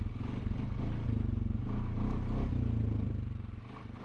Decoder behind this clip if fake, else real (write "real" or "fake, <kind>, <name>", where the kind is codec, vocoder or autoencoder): real